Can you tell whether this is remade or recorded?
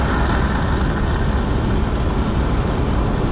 recorded